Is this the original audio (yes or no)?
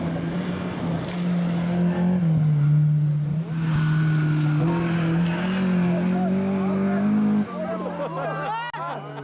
yes